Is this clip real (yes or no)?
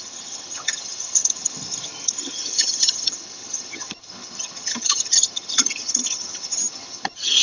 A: no